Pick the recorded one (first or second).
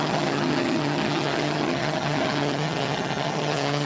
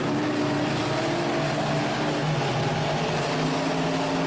second